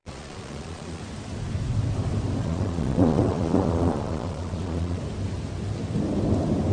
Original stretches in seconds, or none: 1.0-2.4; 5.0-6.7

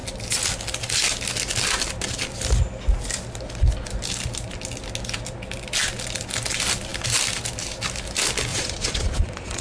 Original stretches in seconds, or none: 0.0-8.5